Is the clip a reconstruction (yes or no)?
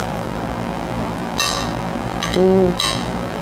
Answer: yes